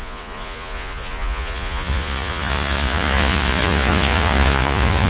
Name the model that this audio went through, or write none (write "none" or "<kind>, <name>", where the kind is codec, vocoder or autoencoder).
vocoder, Vocos